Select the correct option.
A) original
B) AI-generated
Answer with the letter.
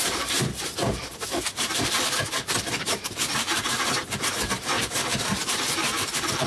B